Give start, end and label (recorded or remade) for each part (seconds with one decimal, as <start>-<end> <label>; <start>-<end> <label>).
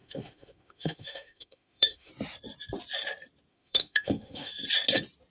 0.0-2.1 remade; 2.1-3.5 recorded; 3.5-4.5 remade; 4.5-5.3 recorded